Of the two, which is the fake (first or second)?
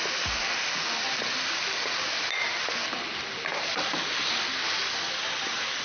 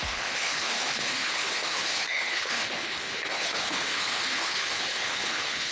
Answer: second